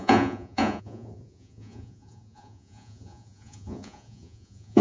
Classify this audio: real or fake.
fake